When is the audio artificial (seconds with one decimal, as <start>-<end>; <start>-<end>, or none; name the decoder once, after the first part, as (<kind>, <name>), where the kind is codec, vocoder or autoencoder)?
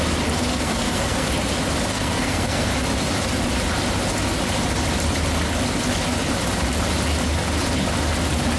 0.5-1.3 (codec, SNAC); 1.9-2.7